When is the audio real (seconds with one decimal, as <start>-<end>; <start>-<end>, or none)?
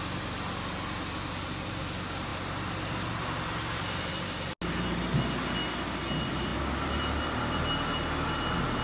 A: 0.0-8.8